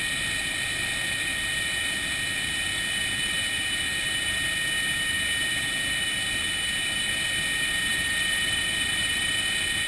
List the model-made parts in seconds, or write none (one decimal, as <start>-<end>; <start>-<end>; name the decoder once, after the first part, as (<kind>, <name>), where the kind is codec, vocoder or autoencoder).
7.9-8.6 (vocoder, BigVGAN v2); 9.0-9.5